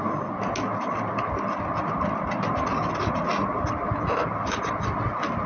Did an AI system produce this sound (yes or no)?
no